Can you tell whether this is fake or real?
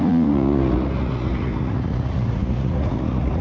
fake